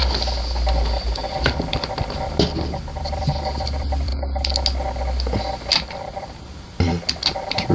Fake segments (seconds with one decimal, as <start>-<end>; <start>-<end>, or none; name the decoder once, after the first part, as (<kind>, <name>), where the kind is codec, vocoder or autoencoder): 3.0-4.1 (vocoder, BigVGAN v2); 5.9-7.7